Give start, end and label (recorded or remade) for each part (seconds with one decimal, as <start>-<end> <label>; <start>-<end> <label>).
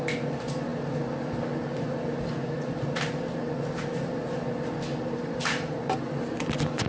0.0-6.9 recorded